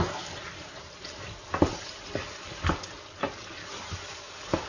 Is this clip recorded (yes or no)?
yes